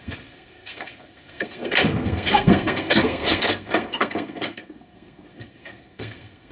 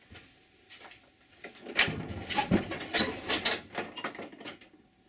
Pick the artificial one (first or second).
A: first